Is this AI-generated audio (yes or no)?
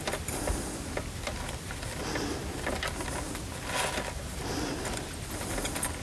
no